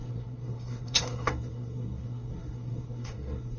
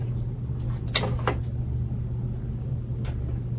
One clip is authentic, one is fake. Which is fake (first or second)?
first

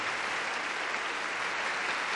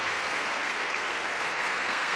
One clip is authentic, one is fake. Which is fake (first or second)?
second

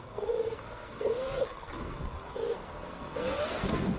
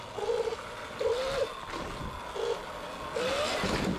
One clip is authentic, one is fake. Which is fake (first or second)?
first